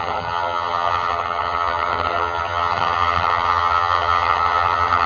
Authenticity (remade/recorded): remade